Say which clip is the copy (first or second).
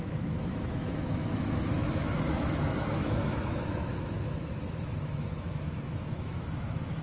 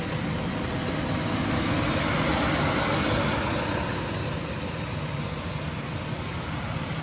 first